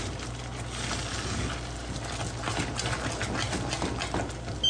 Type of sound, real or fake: real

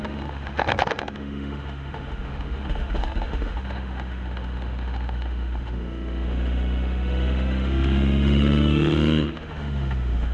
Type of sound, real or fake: fake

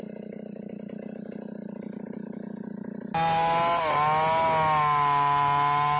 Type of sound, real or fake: real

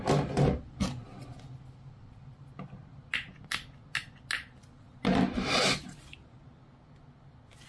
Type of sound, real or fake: real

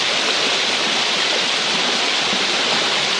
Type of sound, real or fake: real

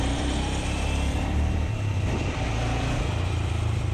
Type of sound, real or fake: fake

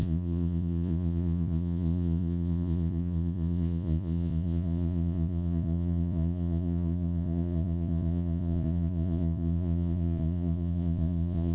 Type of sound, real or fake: fake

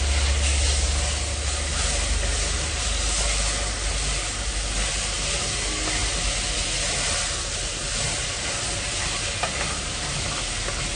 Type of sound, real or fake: real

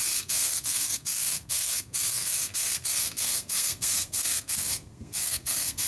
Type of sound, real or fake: fake